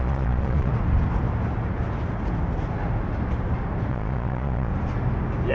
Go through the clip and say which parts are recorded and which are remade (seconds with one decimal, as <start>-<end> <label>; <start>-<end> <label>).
0.0-0.7 remade; 0.7-3.9 recorded; 3.9-4.7 remade; 4.7-5.5 recorded